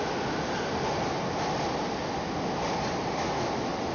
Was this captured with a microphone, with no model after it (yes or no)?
yes